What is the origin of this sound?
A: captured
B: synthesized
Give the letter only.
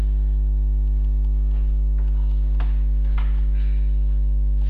A